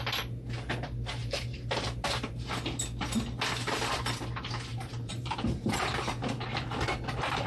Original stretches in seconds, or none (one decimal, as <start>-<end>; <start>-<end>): 0.0-1.2; 2.5-4.7; 6.1-7.5

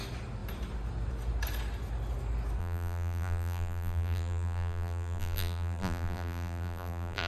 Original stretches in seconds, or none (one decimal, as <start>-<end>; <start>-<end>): 0.0-2.6

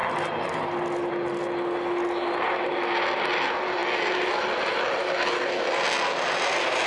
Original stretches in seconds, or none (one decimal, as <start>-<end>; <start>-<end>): 0.0-6.9

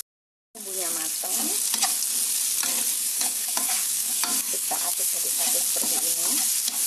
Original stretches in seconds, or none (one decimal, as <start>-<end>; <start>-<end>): 0.0-2.9; 5.1-6.9